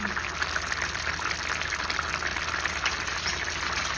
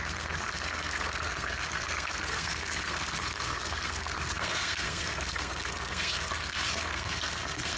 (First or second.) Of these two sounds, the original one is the first